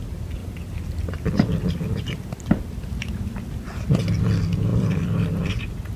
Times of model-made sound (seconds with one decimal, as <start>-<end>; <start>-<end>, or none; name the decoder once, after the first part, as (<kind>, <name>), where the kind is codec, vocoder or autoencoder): 0.4-4.0 (vocoder, BigVGAN v2); 4.7-5.6